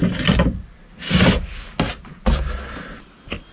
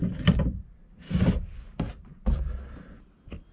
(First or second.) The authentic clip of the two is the first